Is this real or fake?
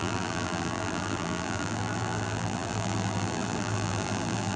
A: fake